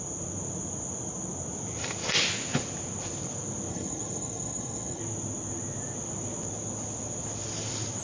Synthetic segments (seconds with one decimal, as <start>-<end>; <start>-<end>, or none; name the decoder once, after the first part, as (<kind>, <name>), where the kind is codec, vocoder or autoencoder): 3.7-5.0 (vocoder, HiFi-GAN)